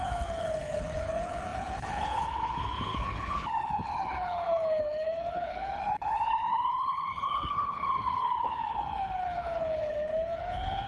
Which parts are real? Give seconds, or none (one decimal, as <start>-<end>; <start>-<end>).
none